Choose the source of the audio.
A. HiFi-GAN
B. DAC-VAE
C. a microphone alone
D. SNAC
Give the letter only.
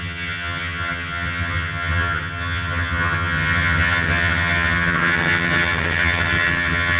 A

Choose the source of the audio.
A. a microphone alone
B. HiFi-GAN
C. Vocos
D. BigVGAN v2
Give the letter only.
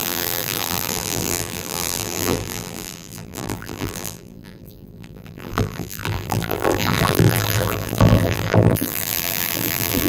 D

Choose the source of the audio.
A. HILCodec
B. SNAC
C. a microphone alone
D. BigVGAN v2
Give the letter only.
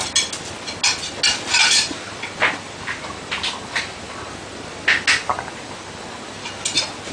C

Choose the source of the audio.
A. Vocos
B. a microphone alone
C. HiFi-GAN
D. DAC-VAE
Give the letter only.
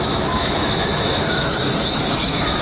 D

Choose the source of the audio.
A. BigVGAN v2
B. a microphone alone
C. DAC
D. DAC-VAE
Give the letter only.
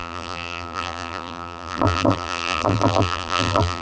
A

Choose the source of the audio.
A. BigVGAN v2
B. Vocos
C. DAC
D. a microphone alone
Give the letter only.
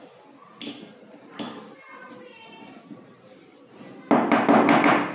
D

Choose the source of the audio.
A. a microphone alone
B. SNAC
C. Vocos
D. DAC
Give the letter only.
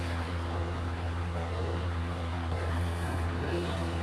B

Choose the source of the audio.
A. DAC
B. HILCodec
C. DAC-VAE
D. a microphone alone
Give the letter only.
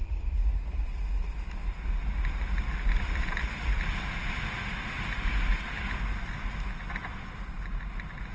D